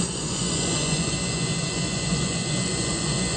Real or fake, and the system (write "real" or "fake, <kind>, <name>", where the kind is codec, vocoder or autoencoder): fake, vocoder, Vocos